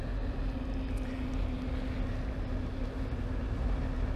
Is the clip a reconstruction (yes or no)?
no